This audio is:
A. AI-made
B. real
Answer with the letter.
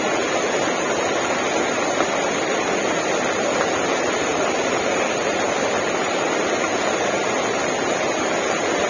B